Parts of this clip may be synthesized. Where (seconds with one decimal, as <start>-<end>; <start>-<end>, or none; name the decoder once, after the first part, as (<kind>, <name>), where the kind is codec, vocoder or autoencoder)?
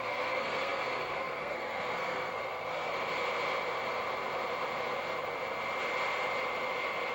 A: 0.0-2.9 (codec, SNAC)